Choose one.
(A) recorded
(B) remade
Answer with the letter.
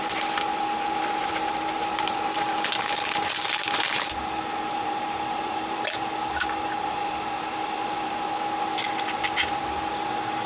B